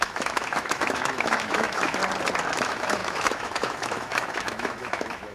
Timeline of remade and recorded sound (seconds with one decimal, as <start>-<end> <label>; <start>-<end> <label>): 0.0-2.0 remade; 2.0-2.5 recorded; 2.5-5.3 remade